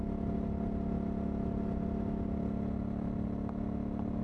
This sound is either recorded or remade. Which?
recorded